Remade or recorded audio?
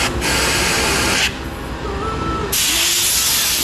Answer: recorded